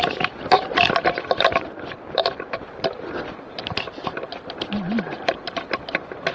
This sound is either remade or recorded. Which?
recorded